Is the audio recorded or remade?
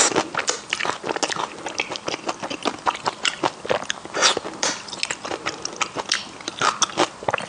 recorded